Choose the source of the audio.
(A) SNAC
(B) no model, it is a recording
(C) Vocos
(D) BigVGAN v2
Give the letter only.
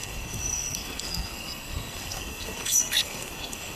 A